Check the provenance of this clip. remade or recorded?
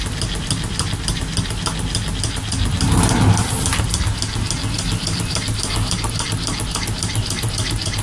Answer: recorded